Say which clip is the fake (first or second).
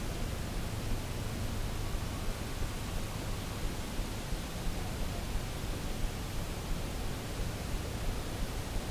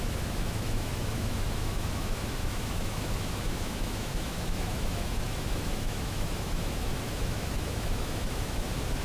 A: second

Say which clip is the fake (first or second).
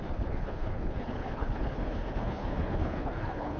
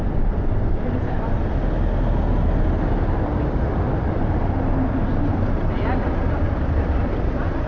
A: first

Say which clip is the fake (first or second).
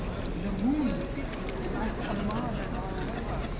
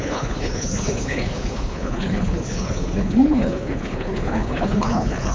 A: second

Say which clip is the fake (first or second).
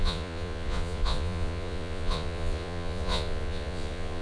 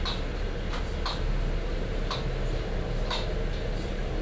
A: first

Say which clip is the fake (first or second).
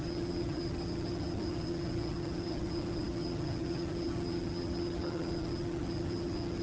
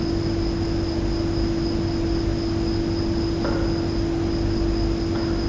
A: first